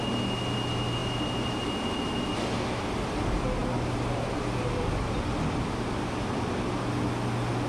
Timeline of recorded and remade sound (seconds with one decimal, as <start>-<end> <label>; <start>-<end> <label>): 0.0-7.7 recorded